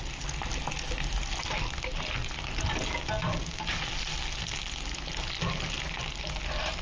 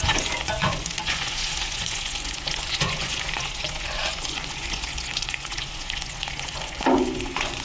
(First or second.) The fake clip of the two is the second